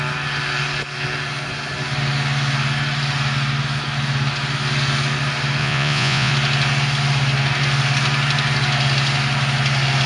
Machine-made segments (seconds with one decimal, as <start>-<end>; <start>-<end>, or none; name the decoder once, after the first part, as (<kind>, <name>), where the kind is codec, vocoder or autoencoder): 5.6-6.3 (vocoder, Vocos)